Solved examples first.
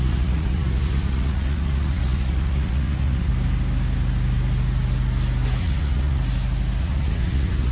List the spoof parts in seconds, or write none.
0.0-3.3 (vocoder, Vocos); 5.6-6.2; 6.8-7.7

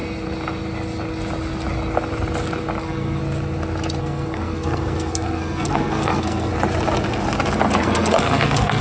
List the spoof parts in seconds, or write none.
2.8-3.2 (codec, SNAC); 4.0-6.5; 7.8-8.8

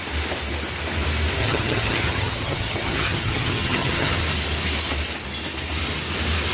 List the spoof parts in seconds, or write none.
1.4-4.2 (vocoder, HiFi-GAN)

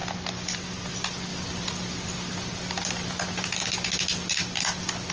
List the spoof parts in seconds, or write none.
none